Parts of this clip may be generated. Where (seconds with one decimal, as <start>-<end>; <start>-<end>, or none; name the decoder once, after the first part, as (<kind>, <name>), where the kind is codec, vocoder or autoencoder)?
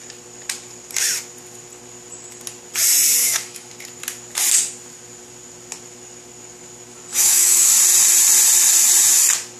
3.2-3.7 (autoencoder, DAC-VAE); 7.1-7.7